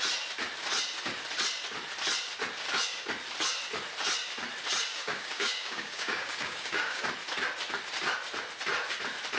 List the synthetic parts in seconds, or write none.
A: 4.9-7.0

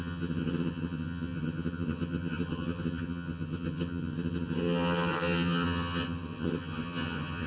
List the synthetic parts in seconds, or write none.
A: 0.0-7.5

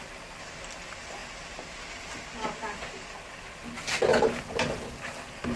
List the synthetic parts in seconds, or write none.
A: none

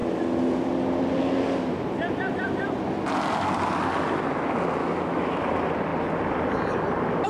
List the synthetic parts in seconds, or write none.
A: 4.8-5.4